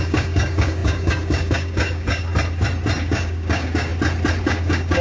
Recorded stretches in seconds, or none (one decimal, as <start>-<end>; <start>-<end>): 2.3-3.0; 3.9-4.4